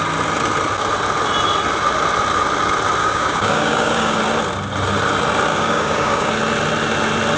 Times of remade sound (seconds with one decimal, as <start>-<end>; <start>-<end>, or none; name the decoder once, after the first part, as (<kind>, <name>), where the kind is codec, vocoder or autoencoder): 3.0-4.2 (codec, DAC); 5.5-6.3